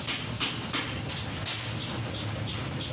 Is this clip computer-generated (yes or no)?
no